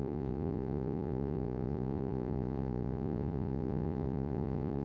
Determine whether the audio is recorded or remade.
remade